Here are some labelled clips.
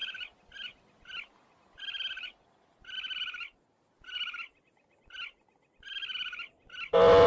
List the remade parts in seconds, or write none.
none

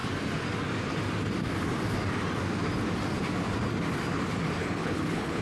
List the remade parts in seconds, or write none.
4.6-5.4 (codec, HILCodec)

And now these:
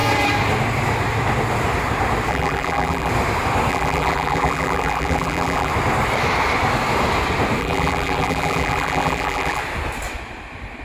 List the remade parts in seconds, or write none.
2.3-3.1 (vocoder, BigVGAN v2); 3.7-5.7; 7.6-9.6